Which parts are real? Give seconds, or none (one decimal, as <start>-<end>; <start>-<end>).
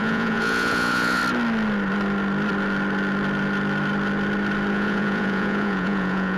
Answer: 1.2-4.7